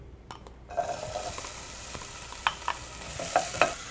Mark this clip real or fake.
real